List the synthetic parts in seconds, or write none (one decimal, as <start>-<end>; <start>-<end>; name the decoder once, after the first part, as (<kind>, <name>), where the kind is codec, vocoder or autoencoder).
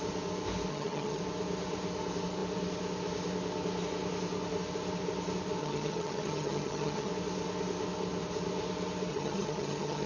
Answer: 0.7-1.2 (vocoder, HiFi-GAN); 5.6-7.1; 9.1-10.1